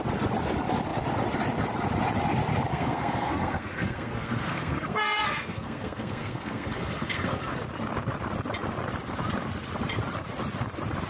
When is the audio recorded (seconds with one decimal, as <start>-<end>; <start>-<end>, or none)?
0.0-2.7; 7.6-11.1